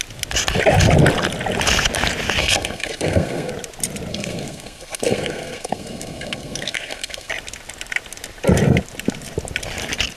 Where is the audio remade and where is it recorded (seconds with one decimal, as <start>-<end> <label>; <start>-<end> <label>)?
0.0-2.4 recorded; 2.4-3.5 remade; 3.5-4.1 recorded; 4.1-7.3 remade; 7.3-10.2 recorded